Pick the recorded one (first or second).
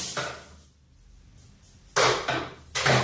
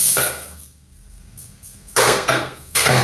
first